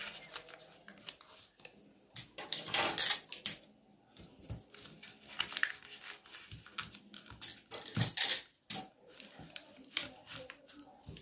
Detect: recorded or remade recorded